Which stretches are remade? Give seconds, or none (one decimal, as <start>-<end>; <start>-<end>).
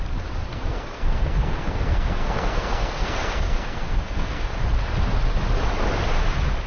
0.5-4.5